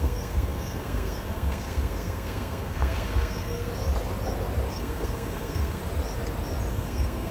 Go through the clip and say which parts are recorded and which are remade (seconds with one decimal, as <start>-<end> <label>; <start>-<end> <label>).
0.0-3.7 remade; 3.7-4.7 recorded; 4.7-5.8 remade; 5.8-6.7 recorded; 6.7-7.3 remade